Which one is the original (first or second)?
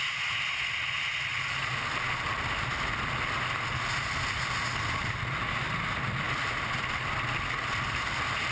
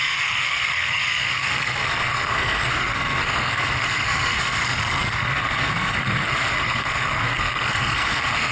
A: first